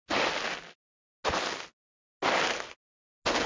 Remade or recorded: recorded